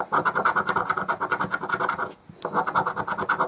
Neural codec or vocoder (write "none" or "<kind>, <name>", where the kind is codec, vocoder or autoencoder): none